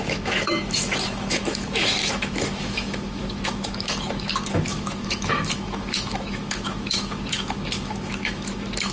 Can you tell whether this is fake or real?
fake